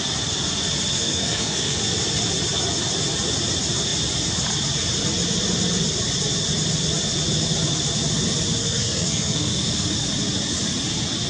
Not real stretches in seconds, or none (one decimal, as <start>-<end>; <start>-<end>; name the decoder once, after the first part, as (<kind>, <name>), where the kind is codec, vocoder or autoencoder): 0.9-1.8 (codec, SNAC); 8.6-9.9